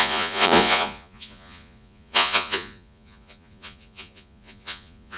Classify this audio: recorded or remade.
remade